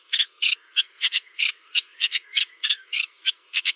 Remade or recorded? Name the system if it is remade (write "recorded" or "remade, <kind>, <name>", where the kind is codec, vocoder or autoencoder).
remade, codec, SNAC